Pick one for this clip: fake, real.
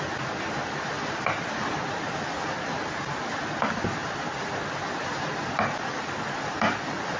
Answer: real